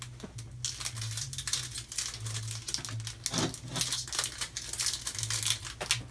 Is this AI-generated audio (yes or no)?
no